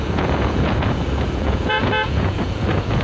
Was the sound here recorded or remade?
remade